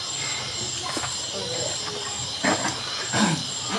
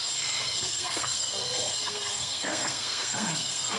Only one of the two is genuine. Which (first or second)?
first